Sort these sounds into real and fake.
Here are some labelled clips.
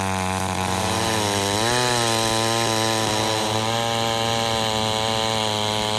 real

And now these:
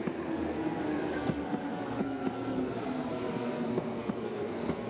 fake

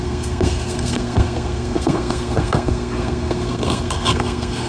fake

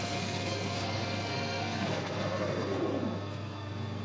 fake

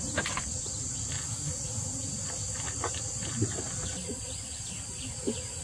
real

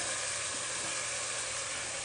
real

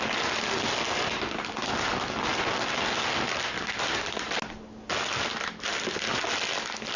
real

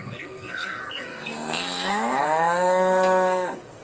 fake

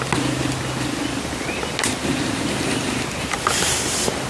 real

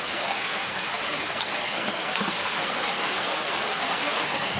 fake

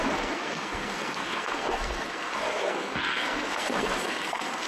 fake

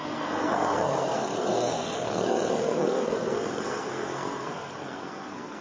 fake